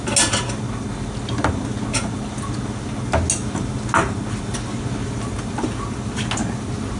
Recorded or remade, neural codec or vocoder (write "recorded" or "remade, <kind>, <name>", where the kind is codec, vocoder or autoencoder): recorded